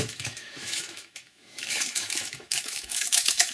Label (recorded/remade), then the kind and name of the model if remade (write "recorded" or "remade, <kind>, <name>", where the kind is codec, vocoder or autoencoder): remade, autoencoder, DAC-VAE